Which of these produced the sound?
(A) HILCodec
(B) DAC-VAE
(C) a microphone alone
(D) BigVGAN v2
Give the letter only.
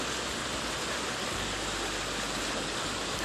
C